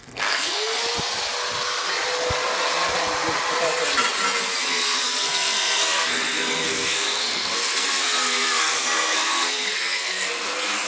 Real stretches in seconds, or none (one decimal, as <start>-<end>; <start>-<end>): 0.8-4.6